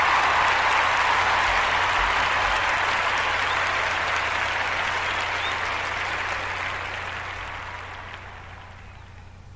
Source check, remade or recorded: recorded